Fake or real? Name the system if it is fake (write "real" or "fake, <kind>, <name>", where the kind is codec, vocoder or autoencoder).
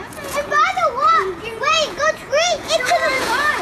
fake, vocoder, Vocos